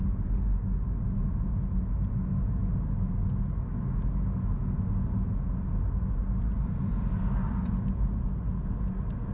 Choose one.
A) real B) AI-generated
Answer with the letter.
A